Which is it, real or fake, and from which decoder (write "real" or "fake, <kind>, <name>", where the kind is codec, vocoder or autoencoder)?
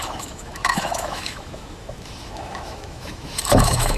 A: fake, autoencoder, DAC-VAE